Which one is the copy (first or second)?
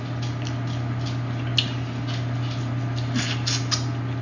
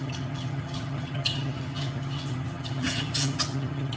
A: second